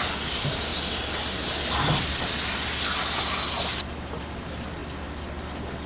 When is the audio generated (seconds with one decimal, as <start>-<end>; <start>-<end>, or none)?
0.0-0.7; 4.2-4.8